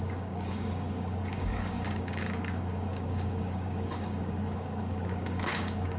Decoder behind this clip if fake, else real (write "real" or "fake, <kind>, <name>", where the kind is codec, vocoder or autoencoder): fake, codec, DAC